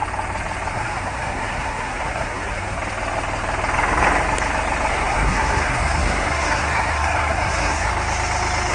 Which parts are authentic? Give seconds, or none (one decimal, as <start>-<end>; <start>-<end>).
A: 0.0-0.7; 2.8-4.9; 7.9-8.7